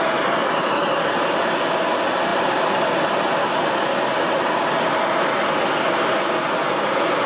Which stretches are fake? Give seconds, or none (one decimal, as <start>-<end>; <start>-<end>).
none